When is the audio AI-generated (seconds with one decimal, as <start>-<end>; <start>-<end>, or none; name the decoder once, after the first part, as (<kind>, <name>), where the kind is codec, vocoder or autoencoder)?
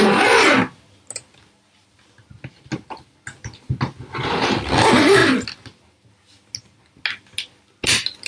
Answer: none